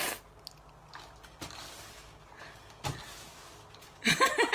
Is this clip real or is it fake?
real